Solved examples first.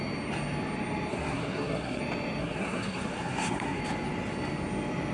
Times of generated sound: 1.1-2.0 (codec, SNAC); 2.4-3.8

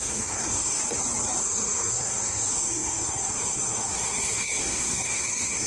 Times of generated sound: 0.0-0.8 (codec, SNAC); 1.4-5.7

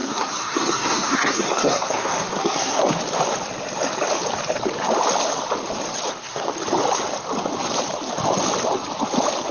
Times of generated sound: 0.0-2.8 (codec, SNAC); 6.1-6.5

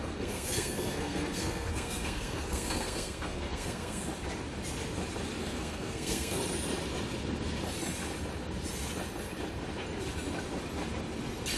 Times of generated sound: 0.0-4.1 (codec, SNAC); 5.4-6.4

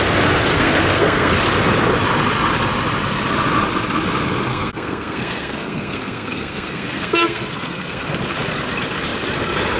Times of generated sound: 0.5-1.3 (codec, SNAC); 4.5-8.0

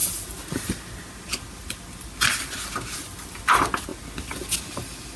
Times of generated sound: none

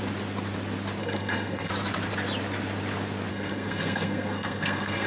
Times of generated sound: 1.0-1.7 (codec, SNAC); 3.3-5.1